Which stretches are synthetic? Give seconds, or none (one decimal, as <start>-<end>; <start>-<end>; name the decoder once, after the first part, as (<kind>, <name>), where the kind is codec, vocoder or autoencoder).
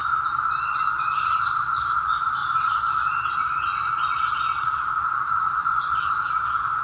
0.6-6.8 (vocoder, Vocos)